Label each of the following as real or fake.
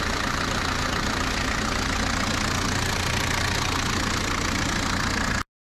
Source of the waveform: real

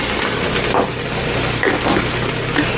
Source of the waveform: real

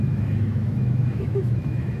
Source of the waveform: fake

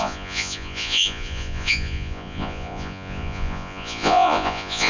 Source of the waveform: fake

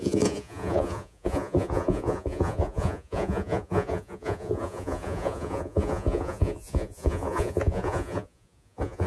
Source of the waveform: fake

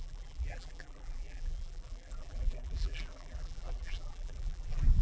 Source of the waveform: fake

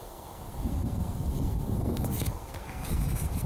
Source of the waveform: fake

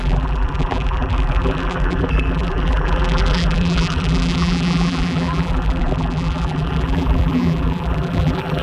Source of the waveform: fake